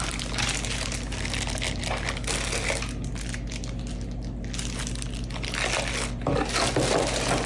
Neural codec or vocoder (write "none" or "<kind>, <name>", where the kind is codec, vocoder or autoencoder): none